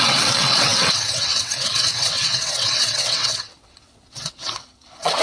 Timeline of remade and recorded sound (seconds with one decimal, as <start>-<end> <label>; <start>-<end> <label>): 0.0-5.2 remade